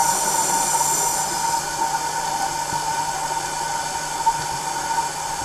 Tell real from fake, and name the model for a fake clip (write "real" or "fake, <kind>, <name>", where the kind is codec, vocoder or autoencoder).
real